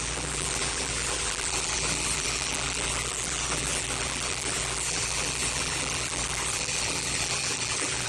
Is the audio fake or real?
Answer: fake